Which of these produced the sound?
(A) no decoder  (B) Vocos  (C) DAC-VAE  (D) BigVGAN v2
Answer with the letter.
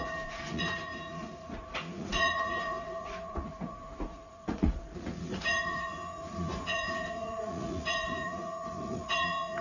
B